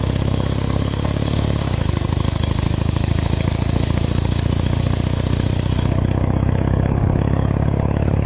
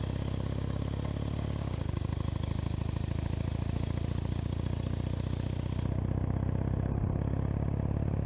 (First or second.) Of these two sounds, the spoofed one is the first